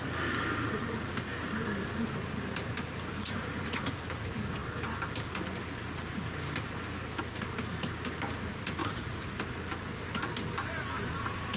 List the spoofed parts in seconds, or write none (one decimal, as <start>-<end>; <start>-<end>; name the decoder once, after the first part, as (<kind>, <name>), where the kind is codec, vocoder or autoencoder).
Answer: 3.2-3.9 (vocoder, Vocos); 8.8-9.3